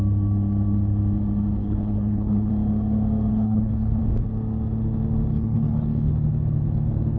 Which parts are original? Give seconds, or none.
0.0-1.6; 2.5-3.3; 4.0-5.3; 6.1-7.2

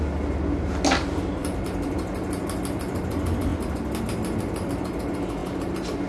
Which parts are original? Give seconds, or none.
0.0-1.4; 2.4-5.4

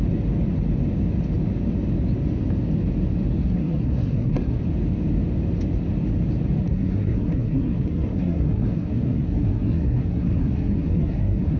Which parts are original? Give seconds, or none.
0.0-3.4; 4.6-6.6

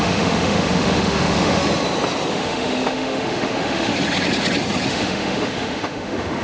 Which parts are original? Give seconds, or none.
1.6-2.3; 3.9-4.9

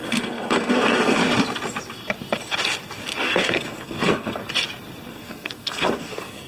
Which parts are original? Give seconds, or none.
1.2-3.2; 4.4-5.1